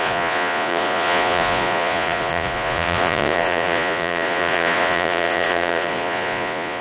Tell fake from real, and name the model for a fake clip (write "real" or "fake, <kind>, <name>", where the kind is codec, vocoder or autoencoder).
fake, vocoder, Vocos